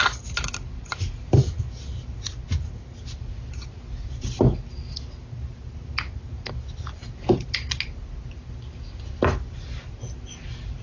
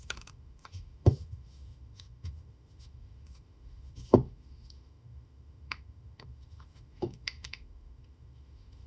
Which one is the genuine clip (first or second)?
first